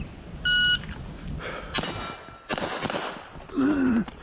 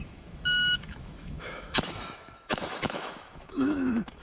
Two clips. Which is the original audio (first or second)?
first